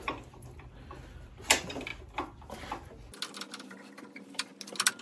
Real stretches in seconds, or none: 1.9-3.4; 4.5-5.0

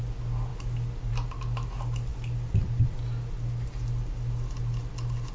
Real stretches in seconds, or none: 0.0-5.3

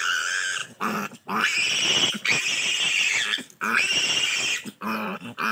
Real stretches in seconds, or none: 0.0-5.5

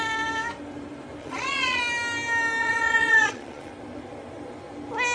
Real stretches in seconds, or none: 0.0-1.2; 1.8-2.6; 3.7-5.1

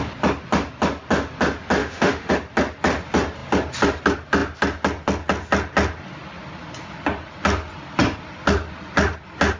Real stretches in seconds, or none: 0.0-1.8; 2.3-9.6

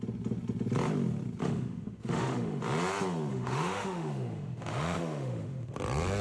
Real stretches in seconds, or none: 0.0-1.4; 2.6-3.3; 5.8-6.2

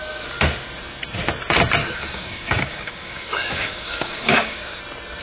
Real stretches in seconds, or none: 0.0-1.8; 4.8-5.2

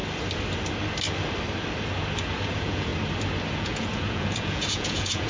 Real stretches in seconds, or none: 0.0-2.5; 2.9-3.5